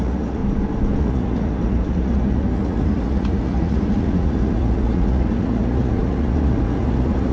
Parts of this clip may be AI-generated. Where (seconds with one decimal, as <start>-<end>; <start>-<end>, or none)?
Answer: 0.0-0.4; 1.0-7.3